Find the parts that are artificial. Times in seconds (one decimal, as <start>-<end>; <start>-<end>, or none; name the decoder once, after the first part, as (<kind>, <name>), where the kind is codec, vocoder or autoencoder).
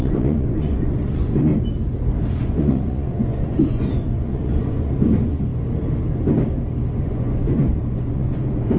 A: 0.0-1.5 (vocoder, Vocos); 2.4-5.5; 7.0-8.8